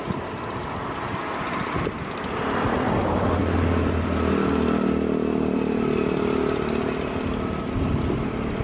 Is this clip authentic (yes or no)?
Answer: yes